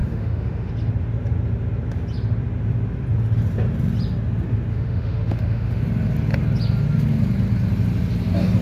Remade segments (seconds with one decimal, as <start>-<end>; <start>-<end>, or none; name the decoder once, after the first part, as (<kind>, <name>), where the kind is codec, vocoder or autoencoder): 0.0-0.7 (autoencoder, DAC-VAE); 4.7-5.8